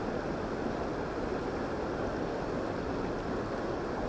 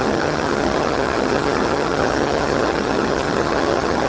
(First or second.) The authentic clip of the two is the first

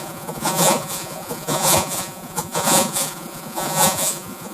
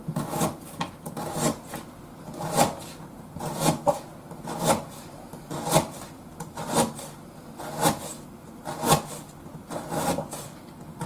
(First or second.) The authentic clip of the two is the second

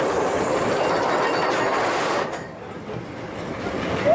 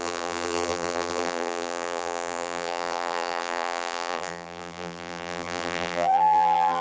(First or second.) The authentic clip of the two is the first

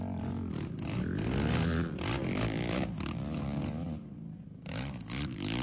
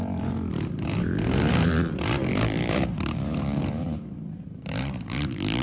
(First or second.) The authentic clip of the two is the first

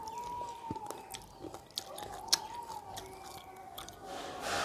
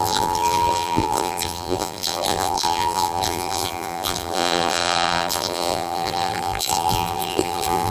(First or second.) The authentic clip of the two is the first